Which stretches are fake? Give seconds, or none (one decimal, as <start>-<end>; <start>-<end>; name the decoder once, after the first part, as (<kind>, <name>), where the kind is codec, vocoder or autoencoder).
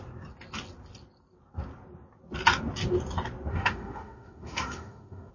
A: 3.5-5.3 (autoencoder, DAC-VAE)